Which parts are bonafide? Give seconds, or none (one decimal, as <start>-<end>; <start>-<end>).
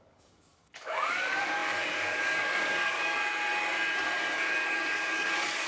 3.2-4.2